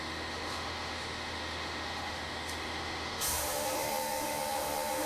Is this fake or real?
fake